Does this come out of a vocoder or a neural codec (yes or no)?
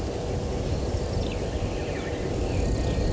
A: no